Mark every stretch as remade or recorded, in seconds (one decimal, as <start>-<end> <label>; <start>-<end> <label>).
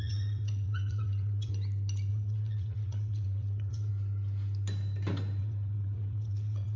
0.0-1.5 remade; 1.5-2.1 recorded; 2.1-3.9 remade; 3.9-5.4 recorded; 5.4-6.8 remade